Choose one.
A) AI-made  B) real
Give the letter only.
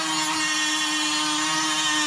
B